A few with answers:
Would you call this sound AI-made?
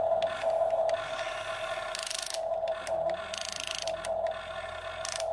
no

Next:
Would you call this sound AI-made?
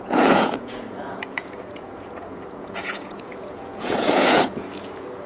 yes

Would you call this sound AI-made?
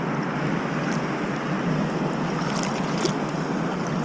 no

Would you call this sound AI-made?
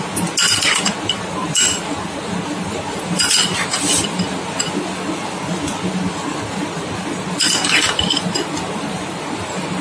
no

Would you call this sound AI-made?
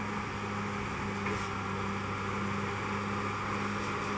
no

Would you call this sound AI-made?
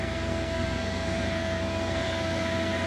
yes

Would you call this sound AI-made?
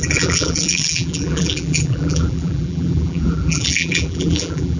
yes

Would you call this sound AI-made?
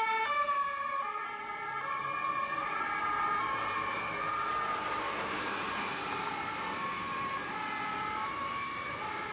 yes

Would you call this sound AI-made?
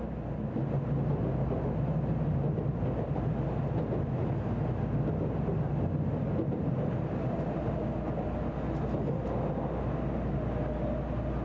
no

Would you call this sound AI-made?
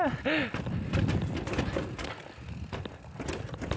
no